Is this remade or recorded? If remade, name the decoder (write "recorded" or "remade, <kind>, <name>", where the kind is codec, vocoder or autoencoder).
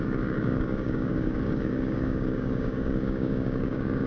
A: remade, codec, DAC